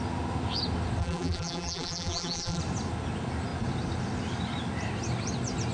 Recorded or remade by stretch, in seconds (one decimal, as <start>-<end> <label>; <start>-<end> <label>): 0.0-1.0 recorded; 1.0-2.6 remade; 2.6-5.7 recorded